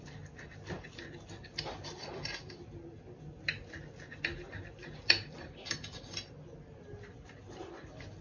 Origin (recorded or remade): recorded